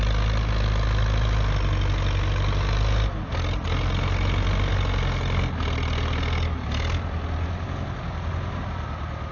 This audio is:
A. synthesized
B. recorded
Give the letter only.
B